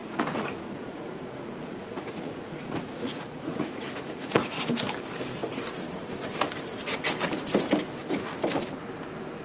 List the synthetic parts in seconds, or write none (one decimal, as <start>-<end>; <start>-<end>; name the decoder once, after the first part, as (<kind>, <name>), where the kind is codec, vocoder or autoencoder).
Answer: 0.0-4.5 (vocoder, Vocos)

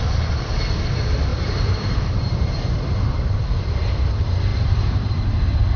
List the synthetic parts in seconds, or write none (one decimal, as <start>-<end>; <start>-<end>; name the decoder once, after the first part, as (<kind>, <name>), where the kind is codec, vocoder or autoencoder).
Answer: 1.3-3.4 (vocoder, BigVGAN v2); 4.5-5.2

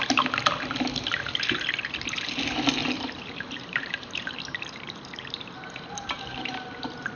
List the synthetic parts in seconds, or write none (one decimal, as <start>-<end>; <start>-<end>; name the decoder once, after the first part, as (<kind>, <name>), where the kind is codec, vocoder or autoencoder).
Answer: 2.8-7.2 (vocoder, BigVGAN v2)

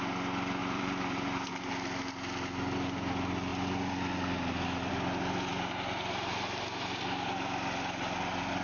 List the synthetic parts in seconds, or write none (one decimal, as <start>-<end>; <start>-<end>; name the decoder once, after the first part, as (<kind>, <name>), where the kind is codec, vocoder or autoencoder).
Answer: 0.6-1.5 (vocoder, BigVGAN v2); 5.5-7.0